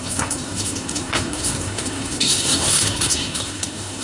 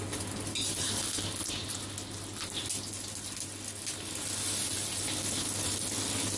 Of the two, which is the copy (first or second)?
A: first